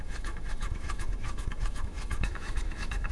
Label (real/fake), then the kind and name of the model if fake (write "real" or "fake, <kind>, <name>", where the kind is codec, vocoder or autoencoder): fake, autoencoder, DAC-VAE